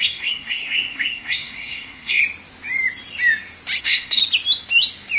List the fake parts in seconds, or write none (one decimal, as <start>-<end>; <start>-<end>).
0.0-2.2; 3.8-4.2